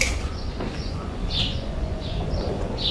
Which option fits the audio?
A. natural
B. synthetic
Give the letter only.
B